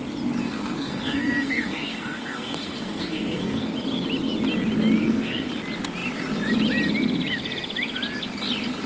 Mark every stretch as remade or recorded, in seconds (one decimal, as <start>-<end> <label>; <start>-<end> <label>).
0.0-0.4 recorded; 0.4-3.7 remade; 3.7-5.0 recorded; 5.0-5.5 remade; 5.5-8.9 recorded